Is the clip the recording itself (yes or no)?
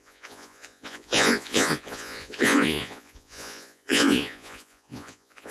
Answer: no